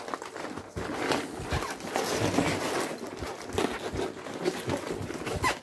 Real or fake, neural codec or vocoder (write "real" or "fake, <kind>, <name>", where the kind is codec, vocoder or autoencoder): real